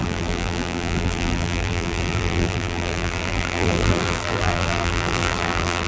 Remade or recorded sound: remade